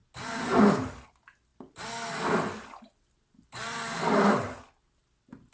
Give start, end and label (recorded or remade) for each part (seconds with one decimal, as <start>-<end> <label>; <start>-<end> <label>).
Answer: 0.0-5.5 recorded